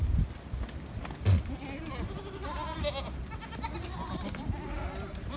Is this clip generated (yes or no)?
no